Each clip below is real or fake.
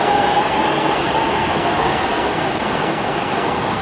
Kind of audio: fake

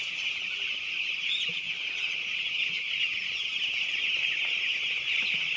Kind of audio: real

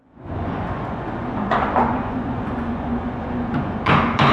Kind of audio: fake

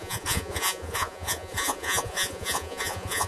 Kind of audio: fake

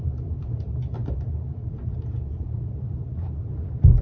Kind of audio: fake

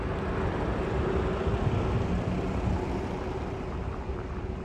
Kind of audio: real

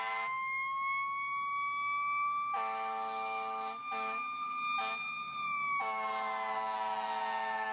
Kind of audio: real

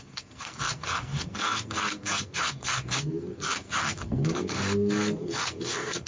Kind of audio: fake